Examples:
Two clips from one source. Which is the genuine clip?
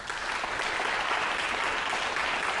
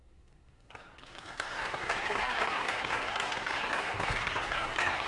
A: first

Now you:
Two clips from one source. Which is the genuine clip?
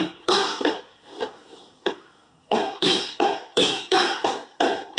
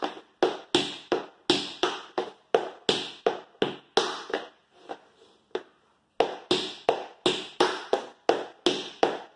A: second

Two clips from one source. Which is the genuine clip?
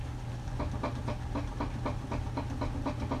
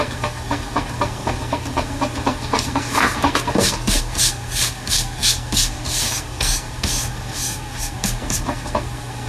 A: first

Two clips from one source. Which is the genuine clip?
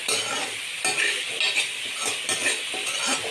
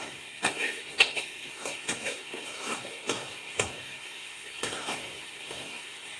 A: first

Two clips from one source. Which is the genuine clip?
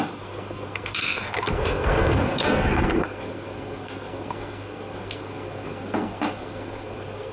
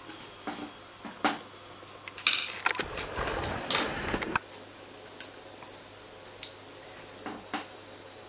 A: second